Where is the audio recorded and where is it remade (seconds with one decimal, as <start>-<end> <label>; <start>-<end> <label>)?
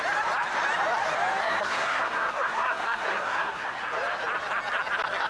0.0-1.4 recorded; 1.4-3.8 remade; 3.8-5.3 recorded